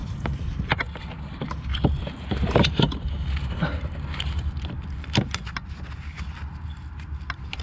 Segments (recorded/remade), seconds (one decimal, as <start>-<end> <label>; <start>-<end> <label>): 0.0-7.6 recorded